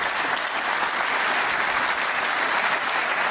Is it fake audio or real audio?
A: real